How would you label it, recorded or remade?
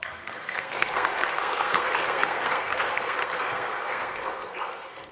remade